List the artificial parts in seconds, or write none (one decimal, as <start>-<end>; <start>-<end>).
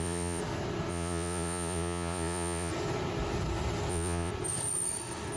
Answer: 0.0-0.4; 0.9-2.7; 3.9-4.3